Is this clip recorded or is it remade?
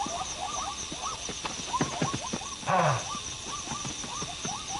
recorded